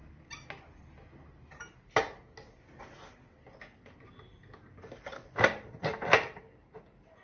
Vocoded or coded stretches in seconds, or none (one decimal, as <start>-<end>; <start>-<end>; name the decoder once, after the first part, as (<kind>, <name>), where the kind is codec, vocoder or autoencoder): none